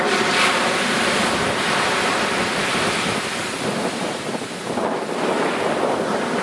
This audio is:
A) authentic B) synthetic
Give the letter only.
A